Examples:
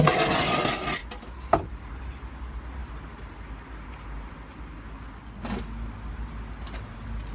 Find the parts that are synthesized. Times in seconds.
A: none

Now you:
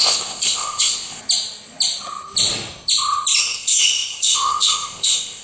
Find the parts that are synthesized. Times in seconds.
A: 0.0-1.2; 3.4-5.4

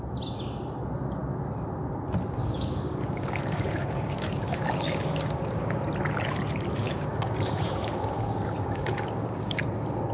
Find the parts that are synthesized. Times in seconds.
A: 2.4-5.6; 6.8-9.6

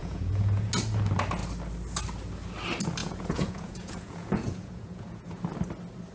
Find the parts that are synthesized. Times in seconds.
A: 0.0-0.7; 3.0-5.4

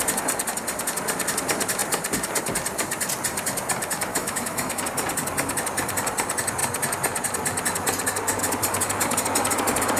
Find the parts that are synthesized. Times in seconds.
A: 4.1-4.8

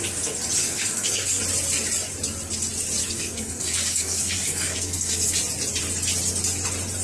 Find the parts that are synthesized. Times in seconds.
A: 0.6-1.4; 3.0-5.3

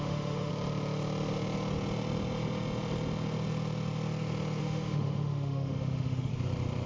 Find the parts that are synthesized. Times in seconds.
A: 0.0-0.5; 4.6-6.3

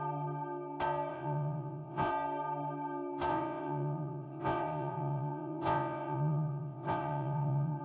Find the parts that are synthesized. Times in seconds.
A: 1.1-2.1; 3.3-7.8